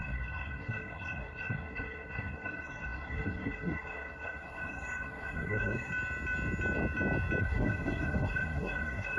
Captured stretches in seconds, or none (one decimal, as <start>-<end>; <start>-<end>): 5.9-7.4